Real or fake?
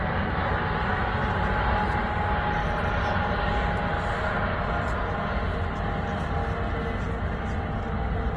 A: real